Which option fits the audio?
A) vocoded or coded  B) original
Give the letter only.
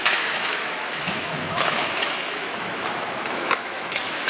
A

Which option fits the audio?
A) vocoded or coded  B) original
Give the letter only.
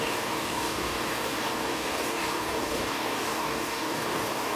A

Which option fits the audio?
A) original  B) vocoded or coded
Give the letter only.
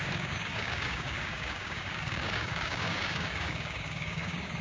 B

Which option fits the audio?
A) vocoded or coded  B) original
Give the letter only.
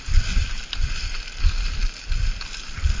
B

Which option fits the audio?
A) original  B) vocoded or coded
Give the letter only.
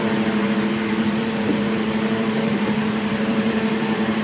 B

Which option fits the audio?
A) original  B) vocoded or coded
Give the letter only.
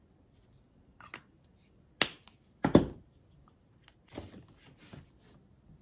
A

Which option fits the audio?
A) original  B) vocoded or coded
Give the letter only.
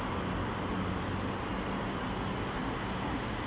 A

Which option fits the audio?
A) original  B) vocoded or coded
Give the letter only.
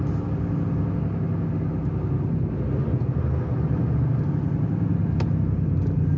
A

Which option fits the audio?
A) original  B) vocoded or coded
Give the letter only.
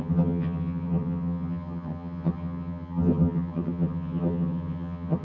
B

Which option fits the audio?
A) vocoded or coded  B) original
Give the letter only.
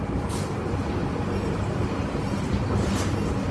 B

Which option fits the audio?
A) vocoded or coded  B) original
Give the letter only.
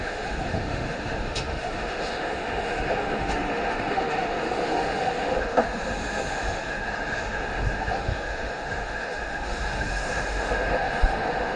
A